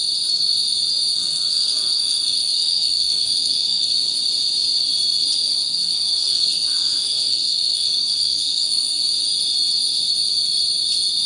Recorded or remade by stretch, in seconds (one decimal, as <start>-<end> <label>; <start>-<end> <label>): 0.0-1.1 recorded; 1.1-3.9 remade; 3.9-5.4 recorded; 5.4-9.0 remade; 9.0-11.3 recorded